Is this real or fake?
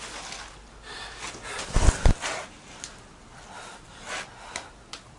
real